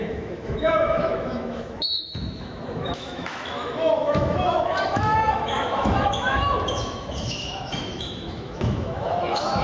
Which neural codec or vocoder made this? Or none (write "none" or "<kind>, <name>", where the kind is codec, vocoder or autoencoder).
autoencoder, DAC-VAE